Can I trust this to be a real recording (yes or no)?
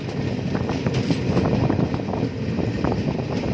yes